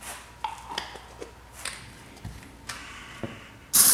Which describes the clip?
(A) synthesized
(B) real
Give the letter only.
B